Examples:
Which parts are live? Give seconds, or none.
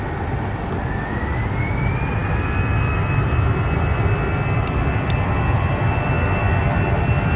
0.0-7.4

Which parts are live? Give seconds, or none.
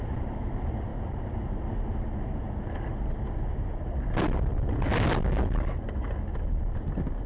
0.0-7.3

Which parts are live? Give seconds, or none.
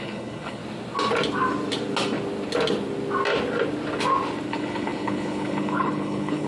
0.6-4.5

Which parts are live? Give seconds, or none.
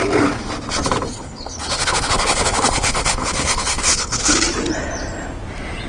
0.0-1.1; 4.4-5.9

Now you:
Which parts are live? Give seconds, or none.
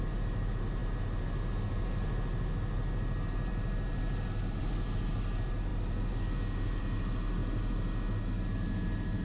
0.0-9.2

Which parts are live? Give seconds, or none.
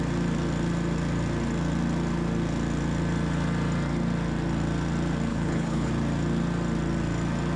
0.0-5.3; 5.9-7.6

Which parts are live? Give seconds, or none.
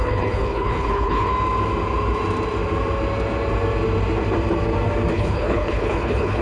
1.3-5.1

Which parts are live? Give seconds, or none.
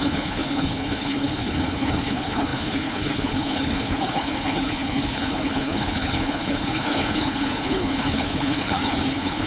none